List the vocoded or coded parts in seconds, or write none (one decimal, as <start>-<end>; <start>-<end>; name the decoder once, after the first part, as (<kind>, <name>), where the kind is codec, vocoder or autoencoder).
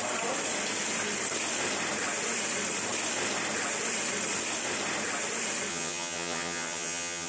5.7-7.3 (vocoder, HiFi-GAN)